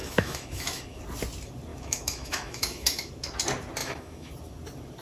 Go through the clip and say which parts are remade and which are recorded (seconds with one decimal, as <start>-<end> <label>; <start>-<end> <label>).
0.0-1.0 remade; 1.0-1.7 recorded; 1.7-3.1 remade; 3.1-3.8 recorded; 3.8-4.3 remade; 4.3-5.0 recorded